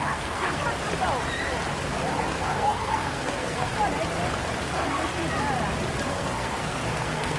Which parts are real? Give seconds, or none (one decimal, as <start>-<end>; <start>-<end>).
0.6-2.2; 3.7-4.6; 5.0-6.1